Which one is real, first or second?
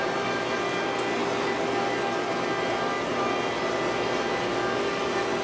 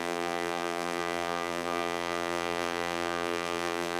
first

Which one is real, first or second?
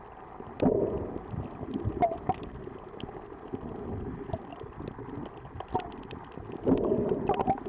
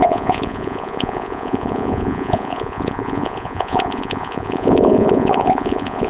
first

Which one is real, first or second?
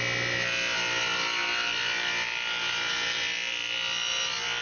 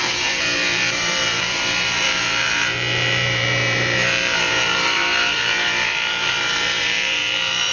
first